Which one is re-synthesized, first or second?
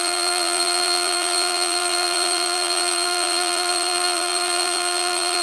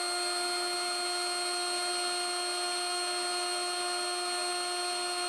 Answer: first